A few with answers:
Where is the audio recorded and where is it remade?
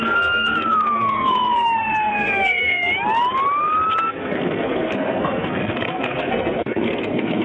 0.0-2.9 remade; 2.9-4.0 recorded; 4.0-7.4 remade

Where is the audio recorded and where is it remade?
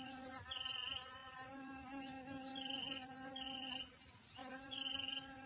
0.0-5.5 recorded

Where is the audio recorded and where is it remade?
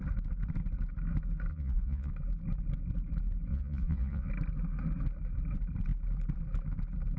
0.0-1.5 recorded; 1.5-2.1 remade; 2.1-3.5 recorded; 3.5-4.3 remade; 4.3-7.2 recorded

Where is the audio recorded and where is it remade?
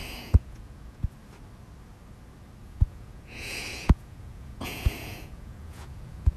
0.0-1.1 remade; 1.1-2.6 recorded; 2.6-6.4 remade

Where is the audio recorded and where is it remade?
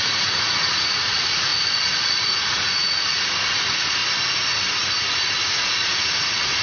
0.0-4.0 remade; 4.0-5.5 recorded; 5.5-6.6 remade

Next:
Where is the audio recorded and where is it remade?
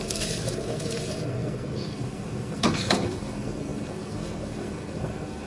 0.0-5.5 remade